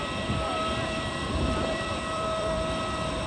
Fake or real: fake